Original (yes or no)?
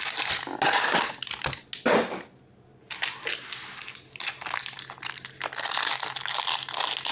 yes